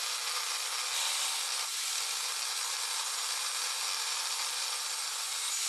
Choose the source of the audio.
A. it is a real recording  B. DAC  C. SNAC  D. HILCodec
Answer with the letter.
A